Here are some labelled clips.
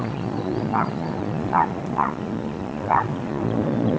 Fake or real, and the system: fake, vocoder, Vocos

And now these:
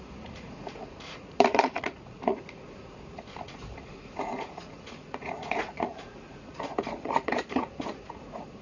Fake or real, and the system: fake, vocoder, Vocos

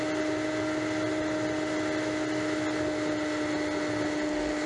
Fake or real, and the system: real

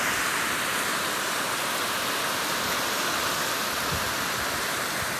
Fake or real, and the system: real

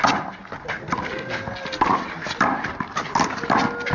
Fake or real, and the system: real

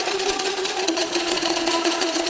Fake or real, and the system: fake, vocoder, Vocos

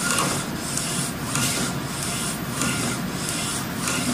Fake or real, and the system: real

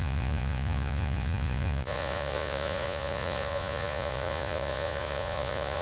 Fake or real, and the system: fake, vocoder, Vocos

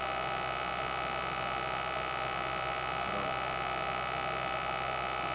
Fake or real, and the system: real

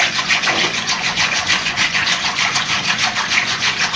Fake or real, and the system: fake, vocoder, Vocos